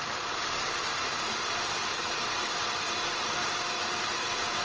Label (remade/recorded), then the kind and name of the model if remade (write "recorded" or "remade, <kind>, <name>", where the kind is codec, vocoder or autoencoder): remade, vocoder, BigVGAN v2